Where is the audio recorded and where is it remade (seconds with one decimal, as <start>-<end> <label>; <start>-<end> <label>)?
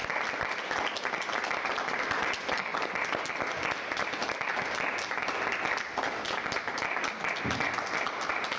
0.0-0.6 remade; 0.6-2.7 recorded; 2.7-3.3 remade; 3.3-8.6 recorded